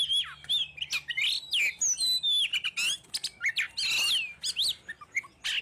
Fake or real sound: real